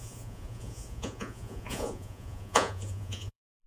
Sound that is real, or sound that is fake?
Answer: fake